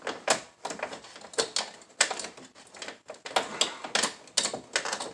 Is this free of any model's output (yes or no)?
yes